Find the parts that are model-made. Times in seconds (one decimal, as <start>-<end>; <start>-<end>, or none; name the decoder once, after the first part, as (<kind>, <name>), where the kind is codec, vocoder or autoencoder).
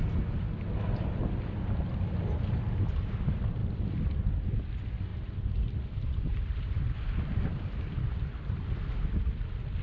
none